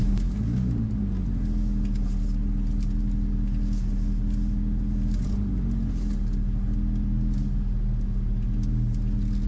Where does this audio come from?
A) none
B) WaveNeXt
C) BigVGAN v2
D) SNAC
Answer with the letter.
A